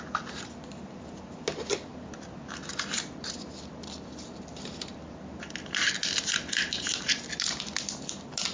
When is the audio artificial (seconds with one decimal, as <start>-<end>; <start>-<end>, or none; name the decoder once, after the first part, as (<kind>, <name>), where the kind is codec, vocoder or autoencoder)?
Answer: none